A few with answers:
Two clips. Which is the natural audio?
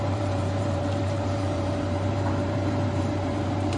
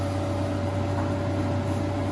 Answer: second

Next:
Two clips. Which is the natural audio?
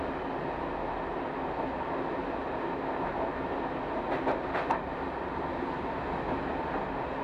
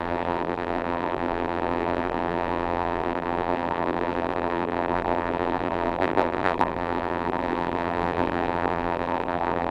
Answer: first